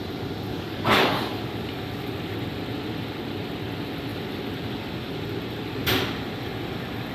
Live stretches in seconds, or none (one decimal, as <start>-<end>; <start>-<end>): 0.0-0.5; 1.4-7.1